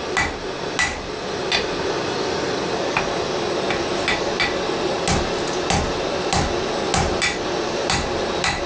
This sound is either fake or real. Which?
real